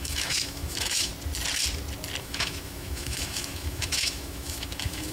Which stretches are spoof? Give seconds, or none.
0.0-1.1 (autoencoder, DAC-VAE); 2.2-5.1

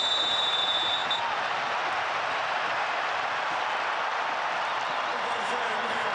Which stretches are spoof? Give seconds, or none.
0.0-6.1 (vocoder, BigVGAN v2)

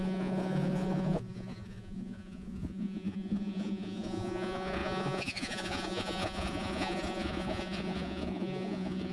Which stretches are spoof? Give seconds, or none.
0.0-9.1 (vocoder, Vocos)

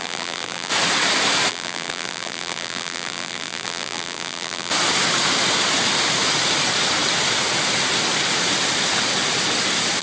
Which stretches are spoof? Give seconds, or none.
0.0-0.7 (vocoder, BigVGAN v2); 1.5-4.7

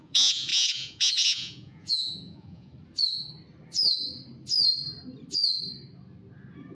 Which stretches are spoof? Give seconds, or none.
0.0-2.7 (vocoder, Vocos)

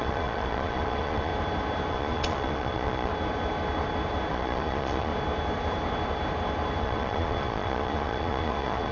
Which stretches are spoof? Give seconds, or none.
0.0-1.3 (vocoder, Vocos); 1.9-3.1; 4.3-5.1; 6.8-8.9